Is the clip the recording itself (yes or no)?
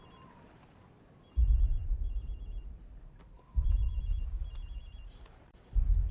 no